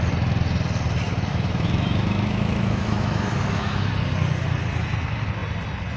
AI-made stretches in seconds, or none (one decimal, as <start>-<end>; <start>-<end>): 1.3-3.9